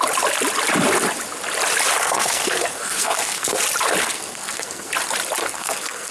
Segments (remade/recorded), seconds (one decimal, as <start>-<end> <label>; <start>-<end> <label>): 0.0-2.0 recorded; 2.0-3.6 remade; 3.6-4.0 recorded; 4.0-4.9 remade; 4.9-5.4 recorded; 5.4-6.1 remade